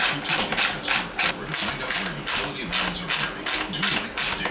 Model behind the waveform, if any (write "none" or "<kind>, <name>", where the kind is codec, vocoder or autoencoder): none